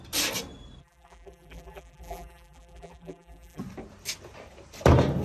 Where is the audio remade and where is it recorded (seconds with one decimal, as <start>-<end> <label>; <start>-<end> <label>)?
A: 0.0-0.8 recorded; 0.8-3.6 remade; 3.6-5.2 recorded